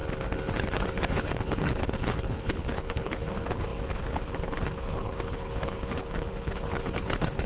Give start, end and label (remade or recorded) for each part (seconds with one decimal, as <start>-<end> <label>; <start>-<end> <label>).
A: 0.0-0.5 recorded; 0.5-7.5 remade